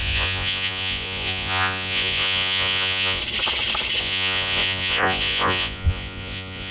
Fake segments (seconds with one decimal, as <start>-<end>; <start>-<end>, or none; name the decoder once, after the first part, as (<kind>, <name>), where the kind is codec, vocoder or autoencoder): 0.0-3.2 (vocoder, Vocos); 4.0-6.7